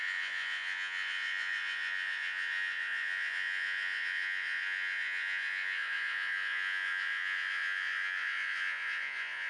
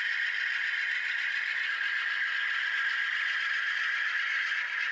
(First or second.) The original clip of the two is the second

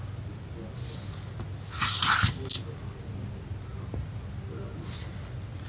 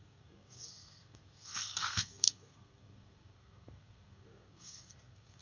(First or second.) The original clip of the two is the first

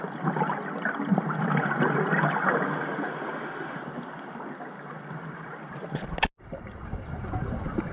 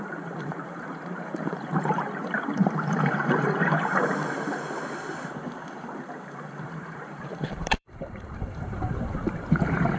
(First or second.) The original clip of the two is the first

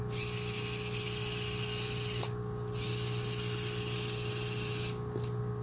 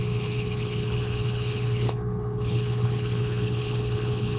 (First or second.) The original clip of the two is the first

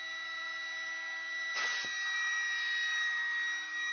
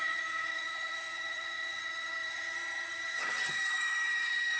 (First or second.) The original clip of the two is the first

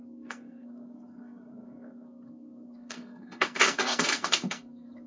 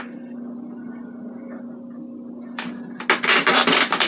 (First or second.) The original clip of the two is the second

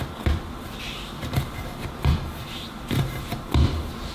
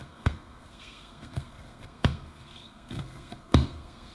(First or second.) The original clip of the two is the first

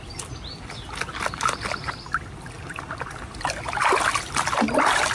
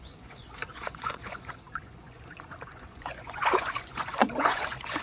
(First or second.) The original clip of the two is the first